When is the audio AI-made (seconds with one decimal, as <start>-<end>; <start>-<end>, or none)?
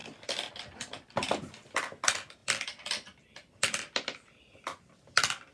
none